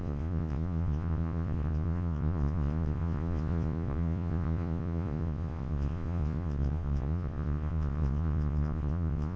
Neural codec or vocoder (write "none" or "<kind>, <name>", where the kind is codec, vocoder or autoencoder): vocoder, Vocos